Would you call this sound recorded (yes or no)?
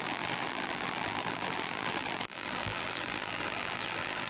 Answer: no